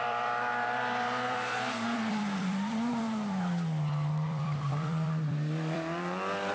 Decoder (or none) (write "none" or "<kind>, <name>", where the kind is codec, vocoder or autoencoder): vocoder, BigVGAN v2